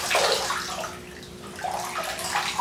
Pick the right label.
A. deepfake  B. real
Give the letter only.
B